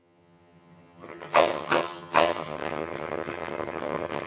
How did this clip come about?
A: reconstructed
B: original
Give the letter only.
A